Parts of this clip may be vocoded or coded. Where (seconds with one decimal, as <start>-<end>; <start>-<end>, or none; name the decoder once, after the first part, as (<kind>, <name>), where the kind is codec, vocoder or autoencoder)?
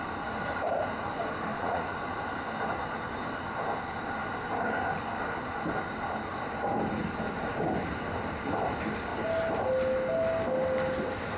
1.5-2.1 (vocoder, Vocos)